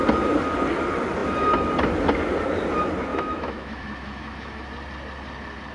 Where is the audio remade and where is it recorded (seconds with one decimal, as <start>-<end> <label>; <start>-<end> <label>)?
0.0-3.1 recorded; 3.1-4.6 remade; 4.6-5.7 recorded